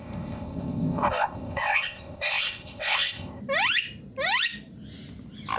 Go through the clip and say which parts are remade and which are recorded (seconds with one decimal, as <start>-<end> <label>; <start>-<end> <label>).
0.0-3.4 remade; 3.4-5.6 recorded